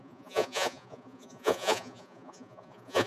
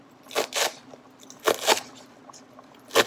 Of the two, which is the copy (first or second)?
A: first